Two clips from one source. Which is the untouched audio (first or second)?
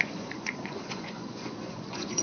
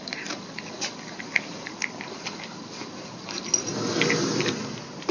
second